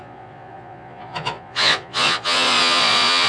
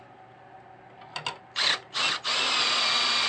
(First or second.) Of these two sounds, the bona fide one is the second